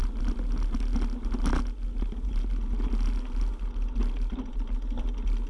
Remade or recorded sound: recorded